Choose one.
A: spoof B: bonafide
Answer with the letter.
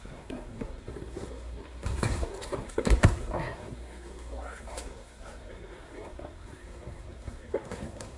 A